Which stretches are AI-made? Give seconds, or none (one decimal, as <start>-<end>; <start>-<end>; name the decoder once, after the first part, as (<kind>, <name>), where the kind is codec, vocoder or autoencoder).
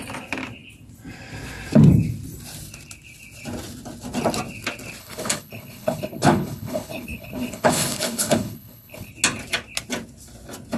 5.0-9.1 (codec, HILCodec)